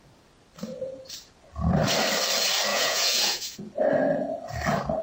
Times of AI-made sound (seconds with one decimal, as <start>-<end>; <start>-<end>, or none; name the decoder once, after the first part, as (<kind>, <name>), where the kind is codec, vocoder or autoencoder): 2.7-3.6 (vocoder, Vocos)